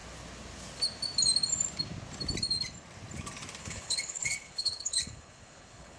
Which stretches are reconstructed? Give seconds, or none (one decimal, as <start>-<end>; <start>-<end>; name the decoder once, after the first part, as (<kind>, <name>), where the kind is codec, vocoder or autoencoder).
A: 3.6-6.0 (codec, HILCodec)

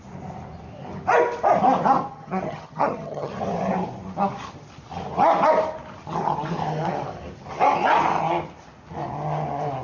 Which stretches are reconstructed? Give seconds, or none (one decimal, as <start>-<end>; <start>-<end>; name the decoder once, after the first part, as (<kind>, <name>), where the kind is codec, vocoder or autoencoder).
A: 2.1-3.3 (vocoder, HiFi-GAN)

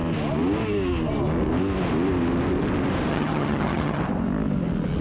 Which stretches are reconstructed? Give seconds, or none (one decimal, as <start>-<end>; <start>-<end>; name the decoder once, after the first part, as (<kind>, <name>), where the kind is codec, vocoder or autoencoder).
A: 3.1-4.0 (vocoder, HiFi-GAN)

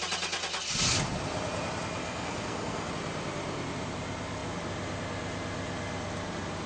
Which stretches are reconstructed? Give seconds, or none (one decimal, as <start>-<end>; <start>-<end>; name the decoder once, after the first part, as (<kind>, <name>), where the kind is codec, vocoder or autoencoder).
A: 2.0-2.9 (codec, SNAC)